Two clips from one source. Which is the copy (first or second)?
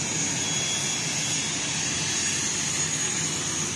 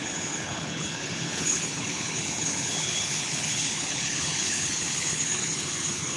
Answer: second